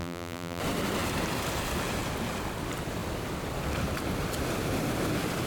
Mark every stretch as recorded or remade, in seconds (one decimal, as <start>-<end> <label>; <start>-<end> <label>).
0.0-0.6 remade; 0.6-5.5 recorded